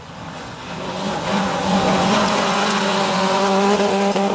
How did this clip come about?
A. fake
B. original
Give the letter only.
A